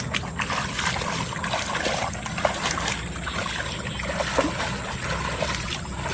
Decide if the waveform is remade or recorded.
recorded